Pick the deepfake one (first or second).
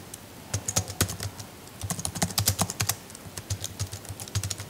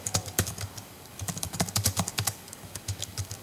second